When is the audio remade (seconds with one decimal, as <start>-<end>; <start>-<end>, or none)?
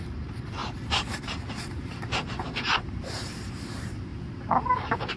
0.0-4.1; 4.6-5.2